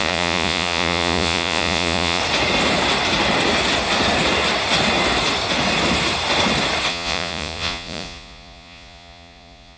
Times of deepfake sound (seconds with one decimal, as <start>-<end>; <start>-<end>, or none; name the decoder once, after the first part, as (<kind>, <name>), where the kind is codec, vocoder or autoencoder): 0.0-2.2 (vocoder, Vocos); 6.9-9.8